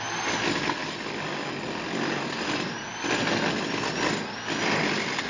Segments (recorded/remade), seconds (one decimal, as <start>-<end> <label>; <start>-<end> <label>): 0.0-5.3 recorded